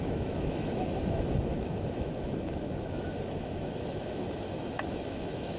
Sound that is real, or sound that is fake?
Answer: fake